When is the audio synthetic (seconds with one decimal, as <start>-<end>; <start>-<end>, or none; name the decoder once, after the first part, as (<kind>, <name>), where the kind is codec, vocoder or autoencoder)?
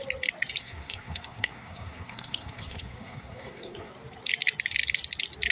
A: 0.6-3.9 (codec, SNAC)